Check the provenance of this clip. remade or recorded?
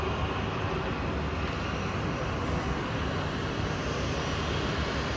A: recorded